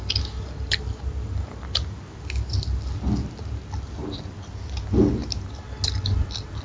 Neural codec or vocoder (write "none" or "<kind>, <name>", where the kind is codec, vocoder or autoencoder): none